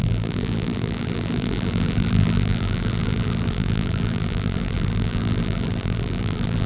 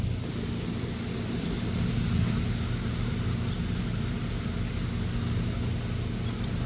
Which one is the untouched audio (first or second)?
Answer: second